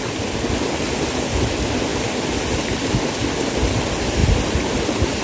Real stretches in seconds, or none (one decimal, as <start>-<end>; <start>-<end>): 0.0-5.2